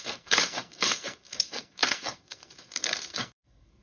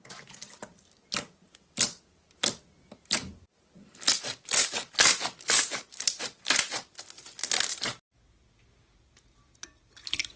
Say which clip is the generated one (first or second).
first